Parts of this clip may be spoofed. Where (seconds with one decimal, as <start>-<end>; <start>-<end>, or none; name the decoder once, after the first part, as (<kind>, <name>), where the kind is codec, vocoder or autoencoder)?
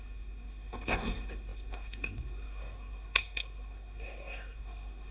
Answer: 0.0-5.1 (codec, SNAC)